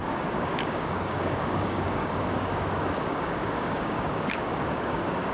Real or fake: fake